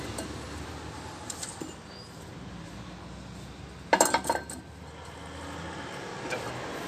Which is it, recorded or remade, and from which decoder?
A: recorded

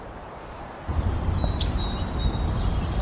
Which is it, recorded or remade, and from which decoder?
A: remade, vocoder, BigVGAN v2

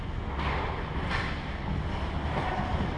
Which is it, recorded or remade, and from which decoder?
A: recorded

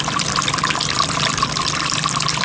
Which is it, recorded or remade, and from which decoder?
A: remade, vocoder, BigVGAN v2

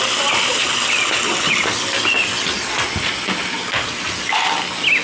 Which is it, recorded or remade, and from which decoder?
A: recorded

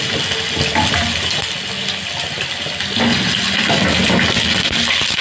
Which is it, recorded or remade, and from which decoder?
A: recorded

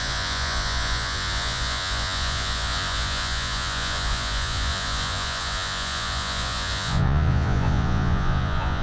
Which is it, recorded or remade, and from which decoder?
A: remade, vocoder, Vocos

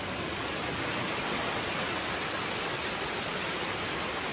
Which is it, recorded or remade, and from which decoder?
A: recorded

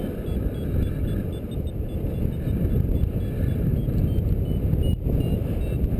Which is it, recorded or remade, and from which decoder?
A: recorded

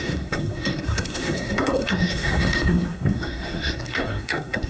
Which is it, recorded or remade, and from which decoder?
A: remade, codec, SNAC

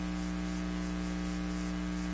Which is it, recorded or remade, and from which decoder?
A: recorded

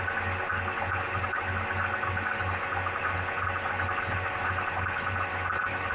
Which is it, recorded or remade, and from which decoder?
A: recorded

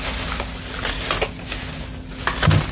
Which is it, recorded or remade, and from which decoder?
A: recorded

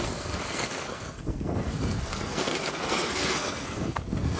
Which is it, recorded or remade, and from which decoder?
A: remade, codec, SNAC